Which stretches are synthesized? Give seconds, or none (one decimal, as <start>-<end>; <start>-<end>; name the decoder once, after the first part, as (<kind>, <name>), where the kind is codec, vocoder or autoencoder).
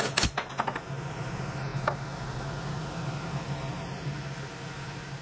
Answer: none